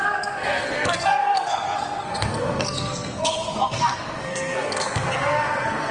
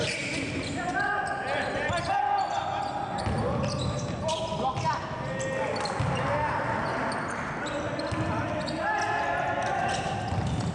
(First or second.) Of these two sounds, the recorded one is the second